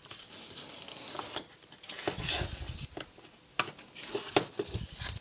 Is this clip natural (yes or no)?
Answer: yes